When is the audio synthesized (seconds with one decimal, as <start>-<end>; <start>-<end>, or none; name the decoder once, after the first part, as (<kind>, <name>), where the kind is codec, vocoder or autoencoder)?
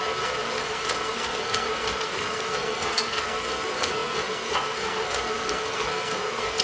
0.0-6.6 (codec, SNAC)